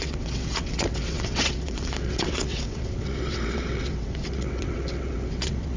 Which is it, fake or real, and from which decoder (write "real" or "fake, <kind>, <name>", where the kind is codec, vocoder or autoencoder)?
fake, vocoder, WaveNeXt